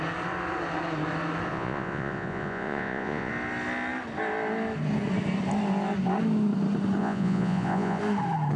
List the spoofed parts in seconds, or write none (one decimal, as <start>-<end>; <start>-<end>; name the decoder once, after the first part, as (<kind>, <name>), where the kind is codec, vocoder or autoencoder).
1.5-3.3 (vocoder, Vocos); 7.0-8.0